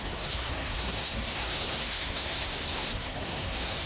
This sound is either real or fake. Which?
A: fake